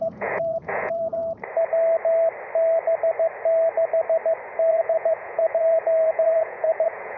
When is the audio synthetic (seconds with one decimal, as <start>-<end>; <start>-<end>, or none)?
0.0-1.2; 4.7-7.2